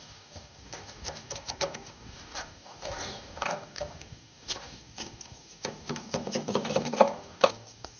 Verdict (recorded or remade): remade